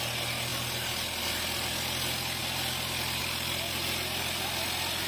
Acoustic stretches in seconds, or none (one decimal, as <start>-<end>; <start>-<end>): 0.0-5.1